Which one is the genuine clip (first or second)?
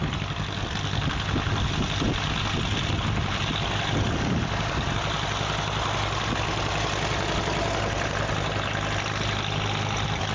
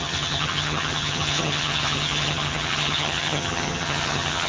first